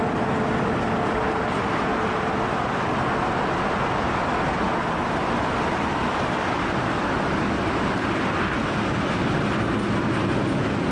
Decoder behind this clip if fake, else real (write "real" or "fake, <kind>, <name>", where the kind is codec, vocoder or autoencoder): real